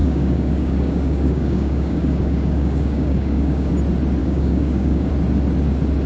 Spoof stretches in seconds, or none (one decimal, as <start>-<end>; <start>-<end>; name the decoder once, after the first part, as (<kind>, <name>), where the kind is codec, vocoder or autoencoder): 0.0-3.7 (codec, DAC); 4.2-5.1